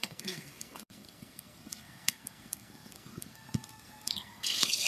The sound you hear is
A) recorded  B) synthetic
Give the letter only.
B